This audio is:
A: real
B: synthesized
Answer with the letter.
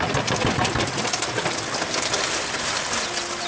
A